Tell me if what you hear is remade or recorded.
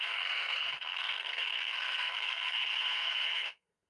remade